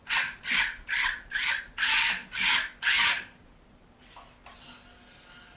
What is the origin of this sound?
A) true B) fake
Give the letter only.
A